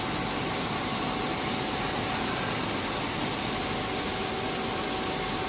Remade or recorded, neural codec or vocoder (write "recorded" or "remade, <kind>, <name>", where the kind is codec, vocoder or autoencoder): recorded